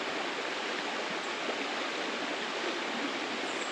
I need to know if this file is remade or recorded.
recorded